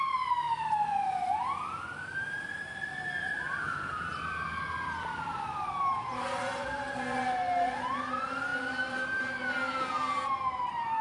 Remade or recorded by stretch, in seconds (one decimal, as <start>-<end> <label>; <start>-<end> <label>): 0.0-11.0 recorded